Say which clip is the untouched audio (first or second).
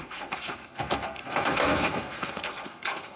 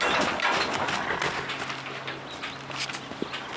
second